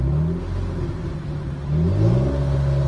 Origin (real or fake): real